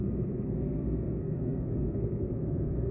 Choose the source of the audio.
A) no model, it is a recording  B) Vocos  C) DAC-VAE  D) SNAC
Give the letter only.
D